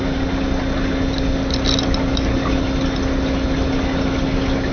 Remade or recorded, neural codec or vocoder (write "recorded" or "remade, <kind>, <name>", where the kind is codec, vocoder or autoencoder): recorded